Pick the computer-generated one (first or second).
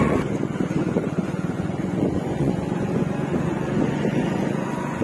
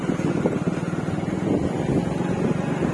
first